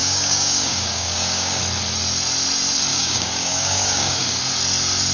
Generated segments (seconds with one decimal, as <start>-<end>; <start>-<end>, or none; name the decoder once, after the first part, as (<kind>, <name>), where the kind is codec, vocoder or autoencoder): 0.0-1.6 (codec, DAC); 2.9-4.4